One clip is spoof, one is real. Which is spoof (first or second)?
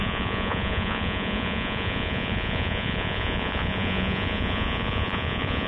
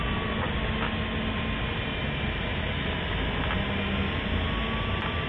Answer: first